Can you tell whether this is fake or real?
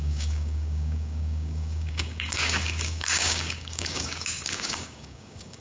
fake